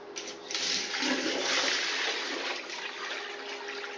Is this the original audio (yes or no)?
yes